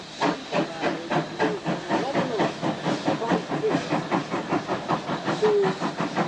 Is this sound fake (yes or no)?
no